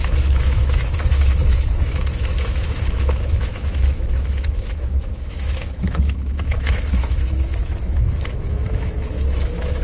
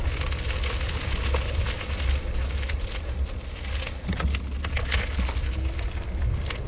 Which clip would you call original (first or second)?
second